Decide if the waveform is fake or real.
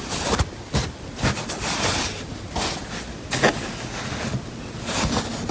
real